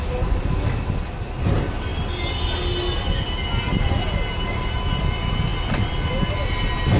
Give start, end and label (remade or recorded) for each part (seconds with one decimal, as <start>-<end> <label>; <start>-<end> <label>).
0.0-7.0 recorded